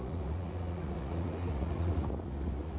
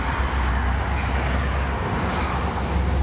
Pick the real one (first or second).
second